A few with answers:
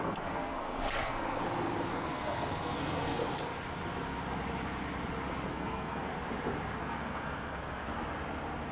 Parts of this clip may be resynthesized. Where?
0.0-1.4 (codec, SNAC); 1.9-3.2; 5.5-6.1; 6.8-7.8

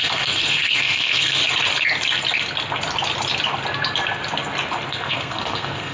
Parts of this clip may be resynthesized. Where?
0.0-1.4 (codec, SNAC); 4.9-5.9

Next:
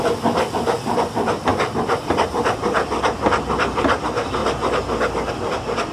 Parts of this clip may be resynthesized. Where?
0.0-4.4 (vocoder, BigVGAN v2); 5.3-5.9

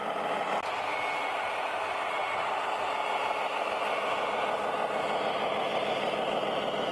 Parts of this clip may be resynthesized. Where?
none